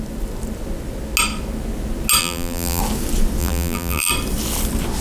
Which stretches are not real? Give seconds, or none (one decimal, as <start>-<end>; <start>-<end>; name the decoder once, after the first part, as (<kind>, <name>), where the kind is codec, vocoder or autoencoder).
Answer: 2.2-2.8 (vocoder, BigVGAN v2); 3.4-4.1